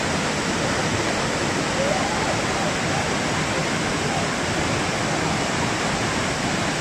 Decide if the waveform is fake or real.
real